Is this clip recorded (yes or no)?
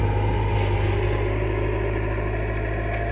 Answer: yes